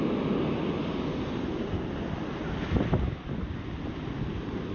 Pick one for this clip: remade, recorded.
recorded